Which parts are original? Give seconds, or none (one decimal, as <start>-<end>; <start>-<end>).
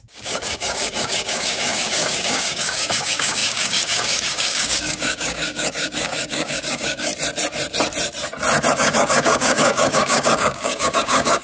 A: 7.1-8.7